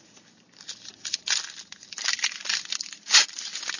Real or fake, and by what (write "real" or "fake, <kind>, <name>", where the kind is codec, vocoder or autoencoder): real